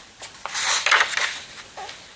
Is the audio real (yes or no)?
yes